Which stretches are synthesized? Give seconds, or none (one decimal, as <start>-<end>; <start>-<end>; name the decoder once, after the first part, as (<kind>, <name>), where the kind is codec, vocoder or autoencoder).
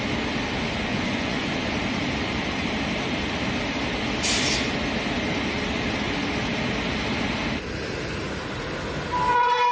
0.9-1.5 (vocoder, Vocos)